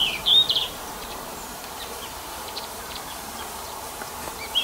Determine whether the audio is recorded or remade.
remade